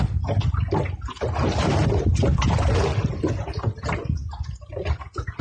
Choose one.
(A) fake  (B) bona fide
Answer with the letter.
B